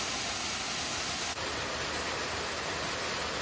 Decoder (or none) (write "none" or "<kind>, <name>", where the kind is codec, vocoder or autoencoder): none